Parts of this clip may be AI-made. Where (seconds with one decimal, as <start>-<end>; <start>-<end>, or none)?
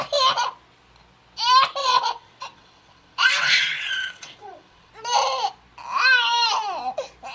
1.8-4.9